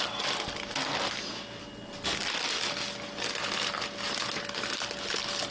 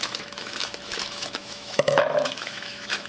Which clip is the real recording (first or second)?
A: first